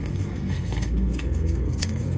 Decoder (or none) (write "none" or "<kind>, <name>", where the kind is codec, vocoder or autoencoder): codec, SNAC